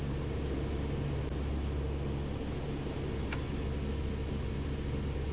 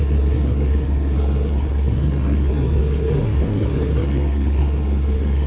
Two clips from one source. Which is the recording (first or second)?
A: first